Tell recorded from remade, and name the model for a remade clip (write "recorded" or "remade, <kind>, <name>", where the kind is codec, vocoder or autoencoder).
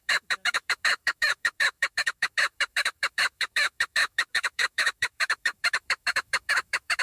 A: remade, autoencoder, DAC-VAE